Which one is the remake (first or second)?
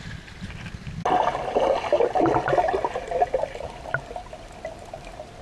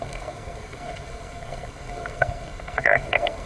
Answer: second